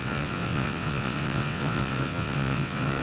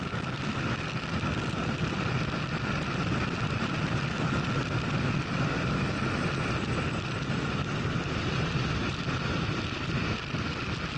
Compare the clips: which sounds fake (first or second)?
first